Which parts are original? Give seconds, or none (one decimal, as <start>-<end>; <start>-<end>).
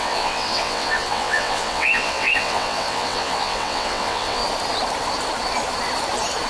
4.4-6.5